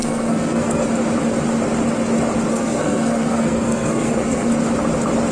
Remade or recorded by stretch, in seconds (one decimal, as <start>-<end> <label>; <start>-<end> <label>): 0.0-0.8 remade; 0.8-2.5 recorded; 2.5-4.5 remade; 4.5-5.3 recorded